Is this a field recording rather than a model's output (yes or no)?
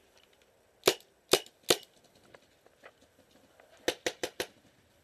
yes